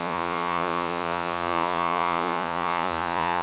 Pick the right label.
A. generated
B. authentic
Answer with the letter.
A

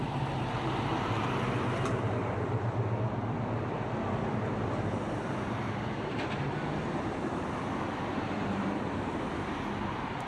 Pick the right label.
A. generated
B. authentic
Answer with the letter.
A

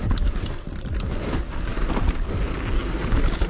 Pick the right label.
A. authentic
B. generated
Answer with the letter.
A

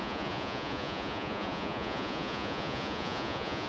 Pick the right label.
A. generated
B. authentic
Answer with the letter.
A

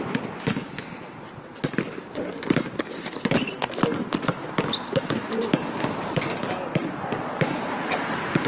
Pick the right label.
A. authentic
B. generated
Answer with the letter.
A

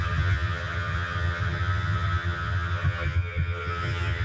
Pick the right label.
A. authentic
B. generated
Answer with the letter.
B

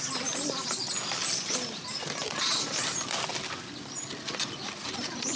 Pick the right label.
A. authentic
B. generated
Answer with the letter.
A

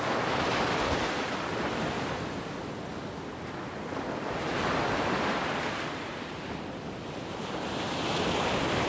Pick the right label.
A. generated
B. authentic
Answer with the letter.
B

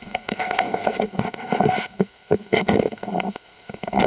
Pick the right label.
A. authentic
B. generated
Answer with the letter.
B